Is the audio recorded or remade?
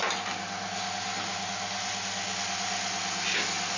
recorded